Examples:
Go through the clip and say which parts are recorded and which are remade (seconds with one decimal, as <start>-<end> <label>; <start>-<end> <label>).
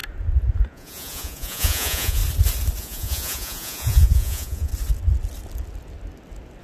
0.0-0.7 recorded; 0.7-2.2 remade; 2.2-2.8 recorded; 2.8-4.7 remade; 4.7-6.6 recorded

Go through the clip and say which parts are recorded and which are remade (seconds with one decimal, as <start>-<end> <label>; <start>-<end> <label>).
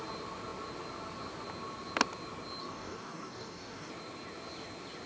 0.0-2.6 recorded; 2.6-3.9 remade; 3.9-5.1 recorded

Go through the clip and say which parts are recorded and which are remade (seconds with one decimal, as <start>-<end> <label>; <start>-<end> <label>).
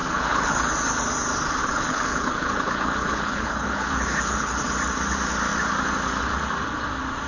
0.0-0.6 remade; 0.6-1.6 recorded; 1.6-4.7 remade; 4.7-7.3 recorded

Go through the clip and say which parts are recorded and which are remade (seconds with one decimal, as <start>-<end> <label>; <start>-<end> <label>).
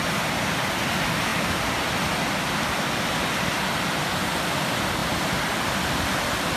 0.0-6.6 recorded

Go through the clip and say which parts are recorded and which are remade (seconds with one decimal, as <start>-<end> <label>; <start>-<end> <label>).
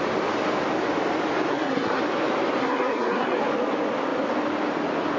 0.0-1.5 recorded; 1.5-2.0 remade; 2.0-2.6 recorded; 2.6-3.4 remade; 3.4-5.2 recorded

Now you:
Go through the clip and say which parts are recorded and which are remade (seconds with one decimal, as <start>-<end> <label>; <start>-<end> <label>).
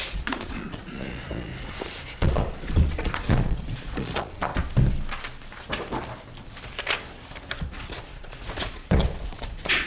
0.0-1.5 remade; 1.5-2.2 recorded; 2.2-4.5 remade; 4.5-7.7 recorded; 7.7-9.9 remade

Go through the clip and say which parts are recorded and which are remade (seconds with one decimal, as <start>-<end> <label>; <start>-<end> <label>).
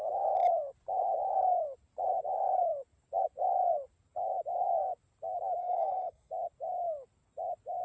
0.0-5.6 recorded; 5.6-6.3 remade; 6.3-7.8 recorded